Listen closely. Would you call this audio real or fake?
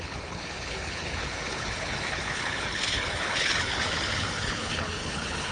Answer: fake